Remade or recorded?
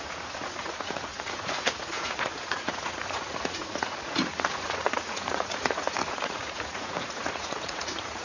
remade